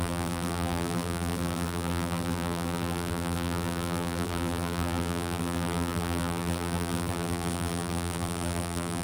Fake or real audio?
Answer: fake